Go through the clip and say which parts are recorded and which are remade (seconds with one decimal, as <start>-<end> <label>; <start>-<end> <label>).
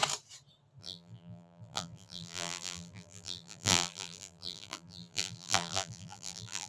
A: 0.0-0.8 recorded; 0.8-6.7 remade